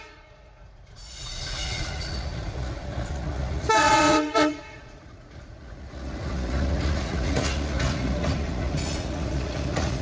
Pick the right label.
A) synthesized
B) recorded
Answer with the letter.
A